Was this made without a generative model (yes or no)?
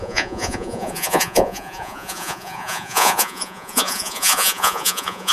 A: no